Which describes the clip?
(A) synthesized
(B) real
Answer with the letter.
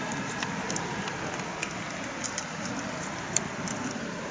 B